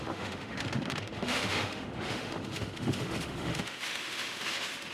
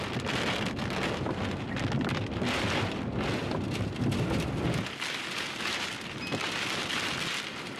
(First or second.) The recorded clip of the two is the second